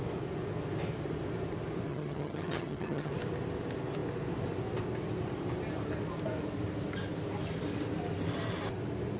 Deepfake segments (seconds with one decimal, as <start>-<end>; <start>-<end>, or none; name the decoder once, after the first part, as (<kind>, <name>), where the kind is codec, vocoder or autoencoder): 1.9-3.1 (vocoder, HiFi-GAN)